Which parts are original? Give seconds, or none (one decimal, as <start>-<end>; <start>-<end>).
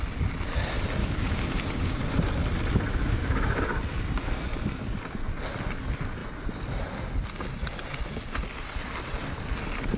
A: 0.0-1.0; 2.0-2.9; 3.7-10.0